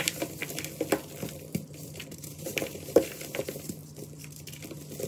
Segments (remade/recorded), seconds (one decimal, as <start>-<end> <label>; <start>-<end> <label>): 0.0-0.4 remade; 0.4-1.5 recorded; 1.5-3.8 remade; 3.8-5.1 recorded